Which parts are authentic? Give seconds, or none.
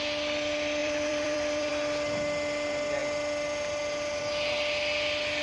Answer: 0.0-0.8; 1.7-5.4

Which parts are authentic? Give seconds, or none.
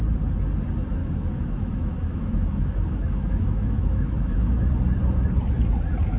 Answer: 0.0-1.0; 4.7-6.2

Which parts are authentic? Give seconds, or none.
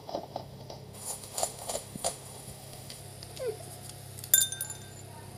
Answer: 3.0-5.4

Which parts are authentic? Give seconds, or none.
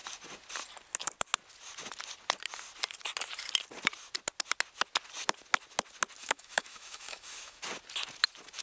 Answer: 0.0-6.2; 7.6-8.6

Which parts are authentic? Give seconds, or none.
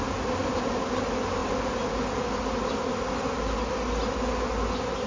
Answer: 0.0-5.1